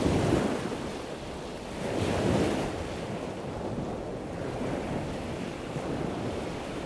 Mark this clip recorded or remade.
recorded